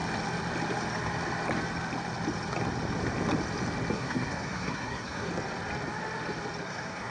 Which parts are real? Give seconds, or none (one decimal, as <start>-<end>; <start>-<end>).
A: 0.0-3.9; 5.3-6.6